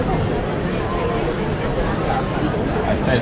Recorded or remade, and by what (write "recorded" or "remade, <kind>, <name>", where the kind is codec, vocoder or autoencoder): recorded